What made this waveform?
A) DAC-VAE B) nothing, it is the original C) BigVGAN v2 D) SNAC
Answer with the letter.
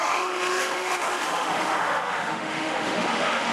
A